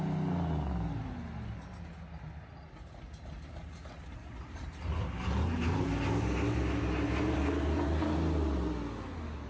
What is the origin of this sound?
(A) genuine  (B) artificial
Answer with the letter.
A